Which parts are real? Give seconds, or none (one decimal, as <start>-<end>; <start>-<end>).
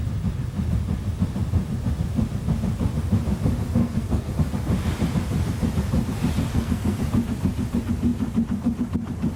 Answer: 0.0-3.8; 4.3-6.5; 7.0-9.4